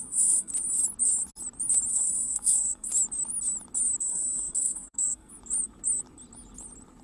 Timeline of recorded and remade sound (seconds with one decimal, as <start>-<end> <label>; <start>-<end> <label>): 0.0-0.5 remade; 0.5-1.9 recorded; 1.9-2.9 remade; 2.9-4.0 recorded; 4.0-5.3 remade; 5.3-7.0 recorded